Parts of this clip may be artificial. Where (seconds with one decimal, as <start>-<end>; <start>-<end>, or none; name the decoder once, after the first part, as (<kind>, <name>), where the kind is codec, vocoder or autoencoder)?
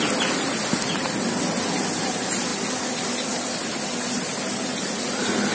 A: none